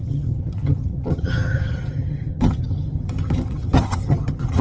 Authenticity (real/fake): fake